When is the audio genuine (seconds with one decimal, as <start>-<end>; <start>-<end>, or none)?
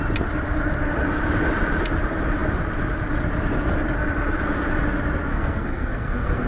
0.0-5.3